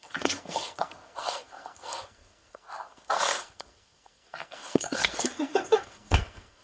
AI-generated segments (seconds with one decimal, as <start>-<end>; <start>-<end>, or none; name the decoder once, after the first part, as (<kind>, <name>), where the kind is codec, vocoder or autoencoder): 0.0-6.6 (codec, SNAC)